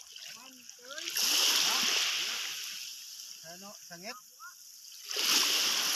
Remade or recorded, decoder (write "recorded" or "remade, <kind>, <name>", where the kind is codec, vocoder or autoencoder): recorded